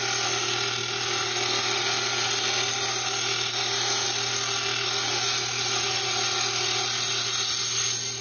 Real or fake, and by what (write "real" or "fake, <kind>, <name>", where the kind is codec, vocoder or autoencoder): real